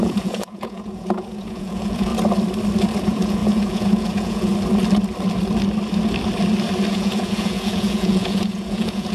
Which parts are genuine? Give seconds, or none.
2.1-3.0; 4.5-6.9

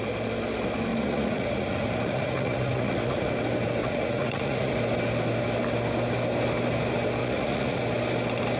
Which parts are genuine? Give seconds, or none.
0.0-0.9; 3.3-3.8; 4.7-7.2; 7.8-8.6

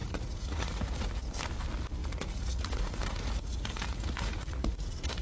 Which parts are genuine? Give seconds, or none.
1.2-2.0

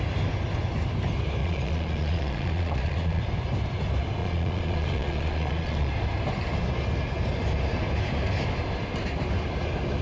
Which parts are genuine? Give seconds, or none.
0.0-1.4; 3.2-4.2; 5.9-10.0

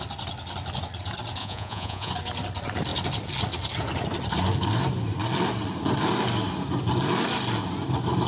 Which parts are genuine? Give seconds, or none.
0.0-1.4; 2.1-8.3

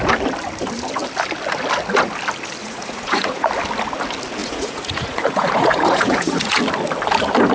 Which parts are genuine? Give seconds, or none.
0.0-2.6; 3.5-4.4; 6.6-7.5

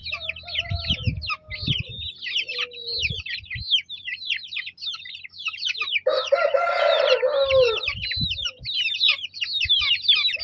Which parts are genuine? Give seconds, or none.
0.0-10.4